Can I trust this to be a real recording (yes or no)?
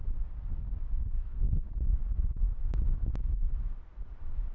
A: yes